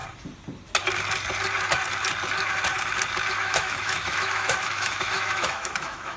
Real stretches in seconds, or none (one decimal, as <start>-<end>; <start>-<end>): 0.0-3.3